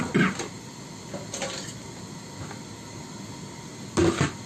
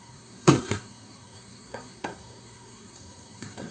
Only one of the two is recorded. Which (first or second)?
first